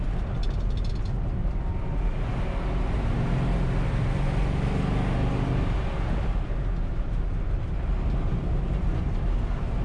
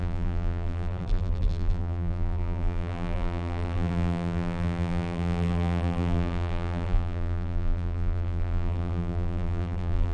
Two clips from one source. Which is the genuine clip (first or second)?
first